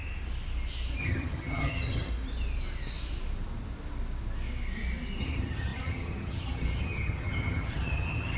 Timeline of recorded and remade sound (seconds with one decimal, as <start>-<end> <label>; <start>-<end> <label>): 0.0-1.0 recorded; 1.0-2.1 remade; 2.1-5.2 recorded; 5.2-8.4 remade